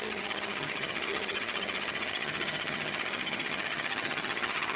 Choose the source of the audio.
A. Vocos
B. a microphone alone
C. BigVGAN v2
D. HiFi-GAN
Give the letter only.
D